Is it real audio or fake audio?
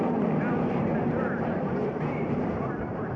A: fake